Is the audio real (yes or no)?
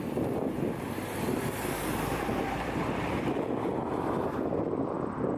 yes